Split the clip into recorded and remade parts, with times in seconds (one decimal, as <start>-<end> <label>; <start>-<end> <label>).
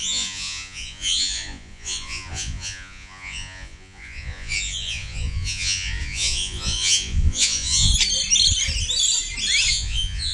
0.0-7.9 remade; 7.9-9.7 recorded; 9.7-10.3 remade